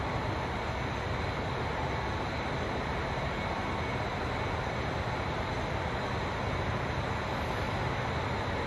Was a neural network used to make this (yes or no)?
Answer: no